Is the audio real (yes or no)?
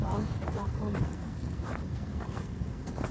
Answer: no